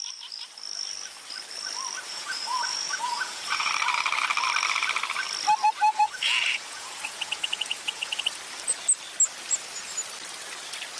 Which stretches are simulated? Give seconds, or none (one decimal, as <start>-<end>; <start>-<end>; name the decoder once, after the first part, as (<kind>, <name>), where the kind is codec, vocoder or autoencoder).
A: 2.1-3.7 (vocoder, Vocos); 5.9-8.2